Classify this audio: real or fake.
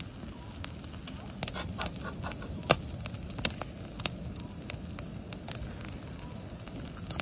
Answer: real